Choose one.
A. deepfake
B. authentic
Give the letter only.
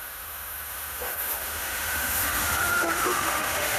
A